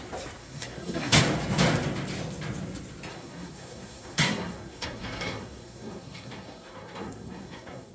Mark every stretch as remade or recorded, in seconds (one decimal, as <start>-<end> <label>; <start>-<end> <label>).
0.0-0.4 recorded; 0.4-1.2 remade; 1.2-3.1 recorded; 3.1-7.9 remade